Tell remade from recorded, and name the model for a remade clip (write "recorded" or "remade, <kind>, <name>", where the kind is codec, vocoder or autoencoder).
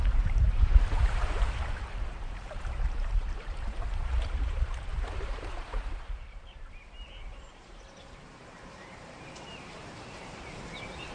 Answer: remade, vocoder, BigVGAN v2